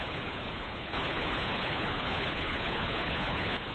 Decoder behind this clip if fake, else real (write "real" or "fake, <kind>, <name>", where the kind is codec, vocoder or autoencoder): fake, codec, HILCodec